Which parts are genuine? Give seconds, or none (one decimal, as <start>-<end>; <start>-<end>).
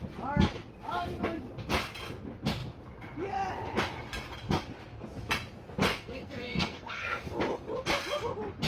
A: 0.0-5.9; 7.4-8.7